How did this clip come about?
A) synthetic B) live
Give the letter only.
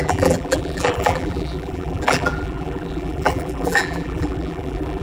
A